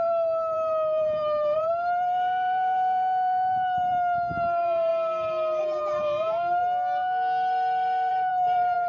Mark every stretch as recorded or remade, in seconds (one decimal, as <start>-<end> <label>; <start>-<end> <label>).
0.0-4.9 remade; 4.9-5.6 recorded; 5.6-6.6 remade; 6.6-8.1 recorded; 8.1-8.9 remade